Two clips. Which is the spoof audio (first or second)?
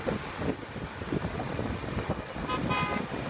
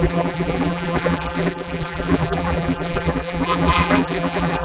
second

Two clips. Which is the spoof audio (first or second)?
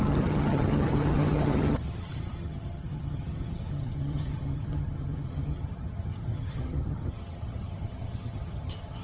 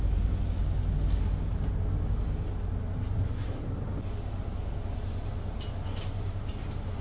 first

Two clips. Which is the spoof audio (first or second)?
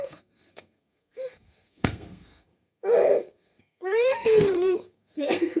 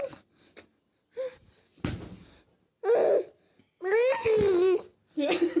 first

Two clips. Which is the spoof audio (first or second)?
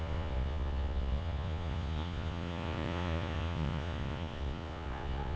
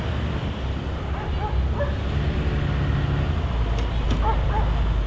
first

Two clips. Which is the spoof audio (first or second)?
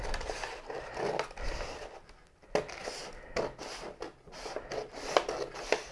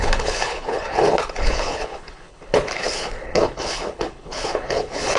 second